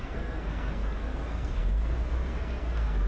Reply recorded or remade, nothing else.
remade